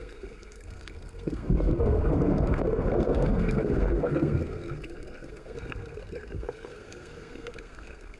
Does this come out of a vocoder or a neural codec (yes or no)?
yes